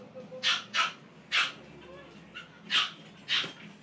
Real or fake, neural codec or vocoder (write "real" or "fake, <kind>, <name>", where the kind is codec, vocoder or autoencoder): real